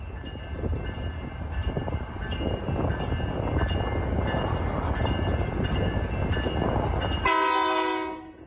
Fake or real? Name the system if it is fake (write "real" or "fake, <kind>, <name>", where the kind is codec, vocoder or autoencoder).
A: real